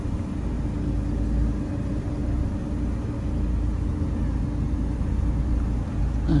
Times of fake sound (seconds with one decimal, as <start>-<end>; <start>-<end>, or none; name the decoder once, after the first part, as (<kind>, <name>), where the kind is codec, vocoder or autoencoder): none